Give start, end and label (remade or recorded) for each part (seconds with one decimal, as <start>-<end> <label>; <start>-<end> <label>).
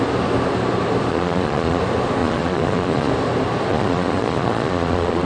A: 0.0-1.1 recorded; 1.1-1.8 remade; 1.8-2.2 recorded; 2.2-3.1 remade; 3.1-3.7 recorded; 3.7-5.3 remade